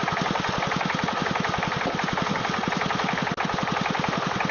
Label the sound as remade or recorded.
recorded